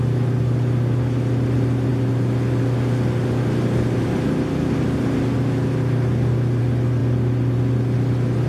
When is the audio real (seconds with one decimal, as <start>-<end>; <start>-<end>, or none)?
0.0-8.5